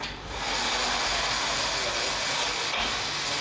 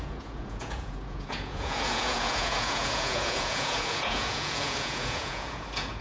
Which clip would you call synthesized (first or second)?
second